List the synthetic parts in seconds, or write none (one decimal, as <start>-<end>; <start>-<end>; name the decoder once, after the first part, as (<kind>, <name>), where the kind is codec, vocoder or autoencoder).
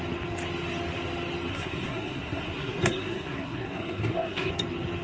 1.5-4.5 (codec, SNAC)